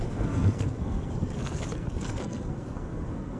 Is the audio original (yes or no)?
no